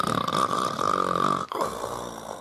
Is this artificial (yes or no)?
no